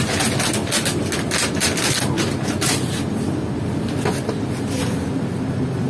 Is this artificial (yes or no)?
no